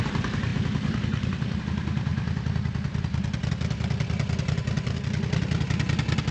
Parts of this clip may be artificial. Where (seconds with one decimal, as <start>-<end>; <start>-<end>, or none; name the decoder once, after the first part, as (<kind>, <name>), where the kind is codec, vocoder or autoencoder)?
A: none